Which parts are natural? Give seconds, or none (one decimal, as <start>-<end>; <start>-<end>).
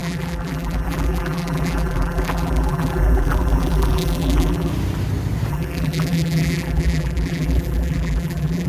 4.7-5.5